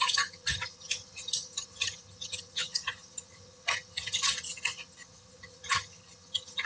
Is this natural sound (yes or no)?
no